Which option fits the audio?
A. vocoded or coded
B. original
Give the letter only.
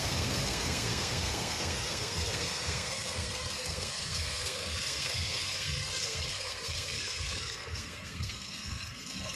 A